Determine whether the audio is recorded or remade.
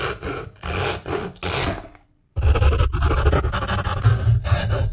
recorded